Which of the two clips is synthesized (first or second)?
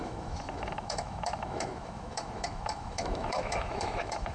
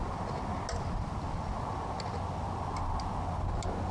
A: first